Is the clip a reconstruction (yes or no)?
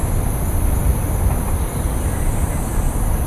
yes